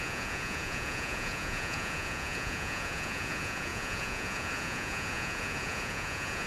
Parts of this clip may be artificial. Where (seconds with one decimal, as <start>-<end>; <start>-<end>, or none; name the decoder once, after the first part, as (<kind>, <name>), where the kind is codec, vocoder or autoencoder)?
0.0-6.5 (vocoder, Vocos)